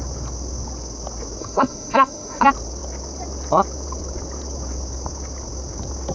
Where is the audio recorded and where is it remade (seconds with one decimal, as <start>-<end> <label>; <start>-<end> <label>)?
0.0-1.4 recorded; 1.4-2.4 remade; 2.4-6.1 recorded

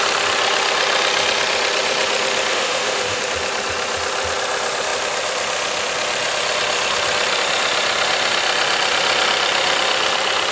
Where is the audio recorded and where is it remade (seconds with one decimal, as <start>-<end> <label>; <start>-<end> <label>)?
0.0-2.5 recorded; 2.5-3.2 remade; 3.2-10.5 recorded

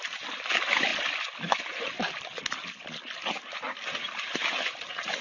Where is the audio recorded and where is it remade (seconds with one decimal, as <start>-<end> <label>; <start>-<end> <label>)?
0.0-5.2 recorded

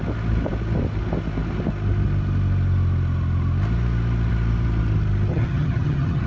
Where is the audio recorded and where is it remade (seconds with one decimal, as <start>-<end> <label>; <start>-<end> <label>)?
0.0-5.3 recorded; 5.3-6.3 remade